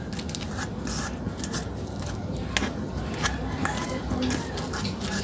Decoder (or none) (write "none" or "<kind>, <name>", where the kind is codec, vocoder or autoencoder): none